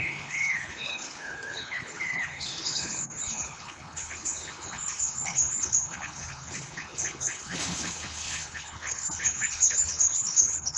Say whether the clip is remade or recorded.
remade